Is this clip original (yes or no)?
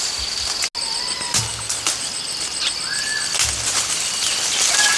yes